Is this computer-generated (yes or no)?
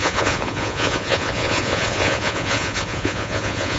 yes